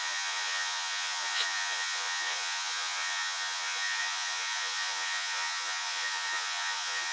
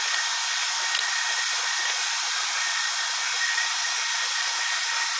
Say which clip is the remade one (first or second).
first